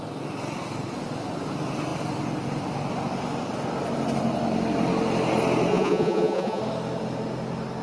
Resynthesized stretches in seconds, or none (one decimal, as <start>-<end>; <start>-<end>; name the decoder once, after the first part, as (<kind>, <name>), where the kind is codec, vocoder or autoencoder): 5.7-6.6 (vocoder, Vocos)